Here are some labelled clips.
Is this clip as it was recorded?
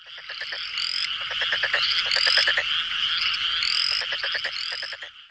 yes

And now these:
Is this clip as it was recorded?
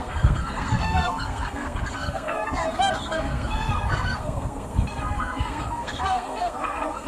no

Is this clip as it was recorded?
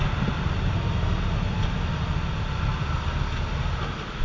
yes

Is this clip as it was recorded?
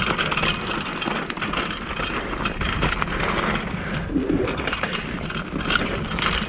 yes